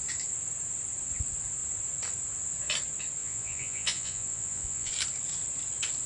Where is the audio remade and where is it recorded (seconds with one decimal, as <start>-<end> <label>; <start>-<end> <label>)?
0.0-3.2 recorded; 3.2-4.9 remade; 4.9-6.1 recorded